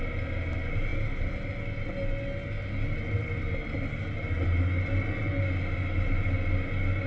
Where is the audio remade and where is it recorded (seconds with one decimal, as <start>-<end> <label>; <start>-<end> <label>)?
0.0-7.1 recorded

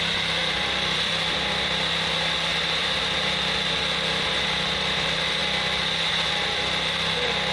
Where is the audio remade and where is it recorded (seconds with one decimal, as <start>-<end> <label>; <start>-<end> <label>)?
0.0-0.4 recorded; 0.4-1.3 remade; 1.3-2.5 recorded; 2.5-3.0 remade; 3.0-7.5 recorded

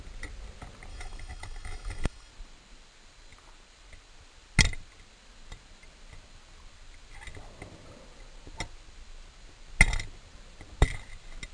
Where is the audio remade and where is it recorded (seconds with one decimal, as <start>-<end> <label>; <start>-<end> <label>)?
0.0-0.9 recorded; 0.9-2.3 remade; 2.3-11.5 recorded

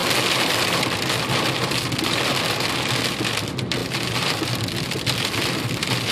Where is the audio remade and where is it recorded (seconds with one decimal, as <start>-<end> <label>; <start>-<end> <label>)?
0.0-6.1 recorded

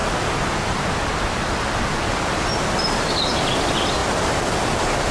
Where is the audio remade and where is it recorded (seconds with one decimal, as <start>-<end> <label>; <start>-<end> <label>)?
0.0-0.9 recorded; 0.9-2.5 remade; 2.5-3.3 recorded; 3.3-4.0 remade; 4.0-5.1 recorded